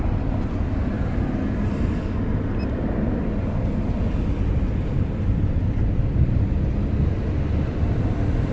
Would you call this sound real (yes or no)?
yes